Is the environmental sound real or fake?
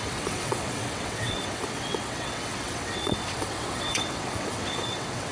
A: fake